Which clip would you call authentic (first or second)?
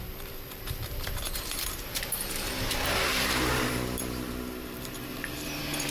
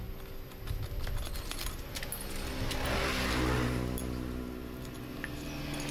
second